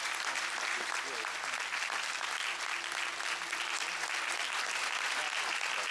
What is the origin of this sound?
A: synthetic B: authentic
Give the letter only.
B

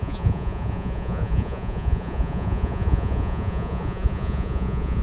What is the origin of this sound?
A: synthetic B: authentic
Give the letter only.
A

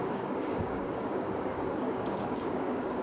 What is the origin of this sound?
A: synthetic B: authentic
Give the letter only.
A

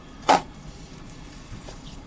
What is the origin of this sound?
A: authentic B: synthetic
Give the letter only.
B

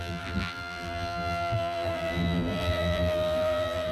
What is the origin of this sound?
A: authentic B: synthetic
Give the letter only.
B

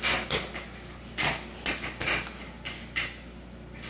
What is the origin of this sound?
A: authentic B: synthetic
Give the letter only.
A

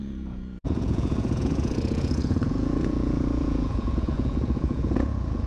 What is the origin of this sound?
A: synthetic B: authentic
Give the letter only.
A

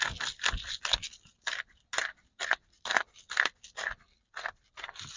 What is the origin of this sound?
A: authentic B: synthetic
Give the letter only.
A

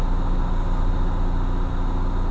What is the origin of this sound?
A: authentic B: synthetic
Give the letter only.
A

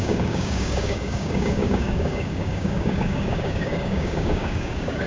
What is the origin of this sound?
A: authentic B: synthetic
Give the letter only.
B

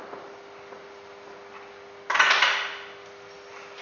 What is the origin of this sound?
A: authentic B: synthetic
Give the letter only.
A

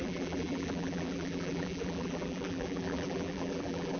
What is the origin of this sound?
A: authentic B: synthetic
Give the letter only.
B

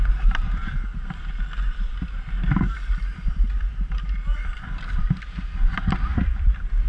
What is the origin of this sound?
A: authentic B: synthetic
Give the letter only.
A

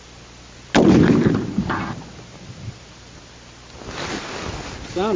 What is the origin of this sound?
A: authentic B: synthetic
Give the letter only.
A